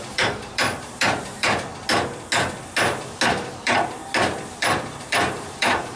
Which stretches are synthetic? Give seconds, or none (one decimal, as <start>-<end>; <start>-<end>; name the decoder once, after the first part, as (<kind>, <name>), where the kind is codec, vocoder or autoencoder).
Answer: 0.0-1.7 (vocoder, BigVGAN v2); 3.3-4.0; 4.6-6.0